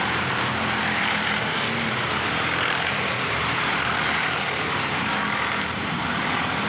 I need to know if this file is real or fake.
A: fake